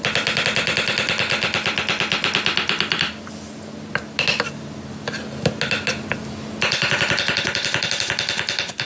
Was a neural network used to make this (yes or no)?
no